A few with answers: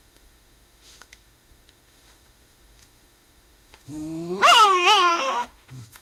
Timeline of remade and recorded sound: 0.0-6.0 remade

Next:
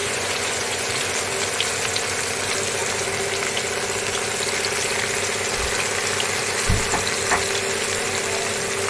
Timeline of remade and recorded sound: 0.0-0.9 remade; 0.9-8.9 recorded

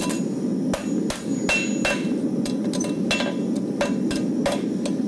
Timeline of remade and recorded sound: 0.0-5.1 recorded

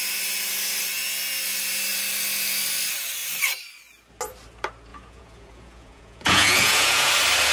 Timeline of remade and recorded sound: 0.0-4.9 recorded; 4.9-7.1 remade; 7.1-7.5 recorded

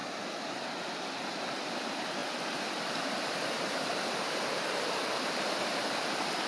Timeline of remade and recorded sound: 0.0-1.4 recorded; 1.4-6.5 remade